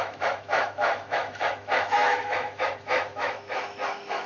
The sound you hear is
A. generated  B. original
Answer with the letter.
A